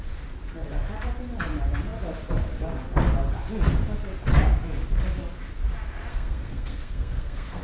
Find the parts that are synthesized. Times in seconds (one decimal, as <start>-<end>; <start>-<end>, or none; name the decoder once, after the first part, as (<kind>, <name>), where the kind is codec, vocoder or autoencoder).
6.1-7.6 (codec, SNAC)